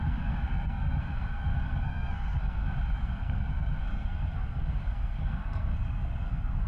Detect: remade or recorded remade